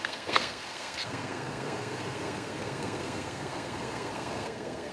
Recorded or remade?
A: remade